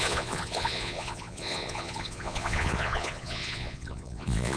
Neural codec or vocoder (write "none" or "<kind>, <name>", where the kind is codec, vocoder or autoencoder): vocoder, Vocos